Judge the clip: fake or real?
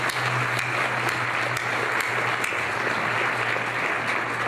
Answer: real